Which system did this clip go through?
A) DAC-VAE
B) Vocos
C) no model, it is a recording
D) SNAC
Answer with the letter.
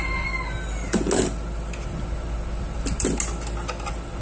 C